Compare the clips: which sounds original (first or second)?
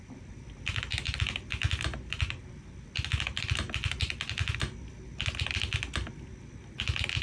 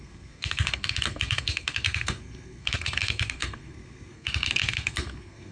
first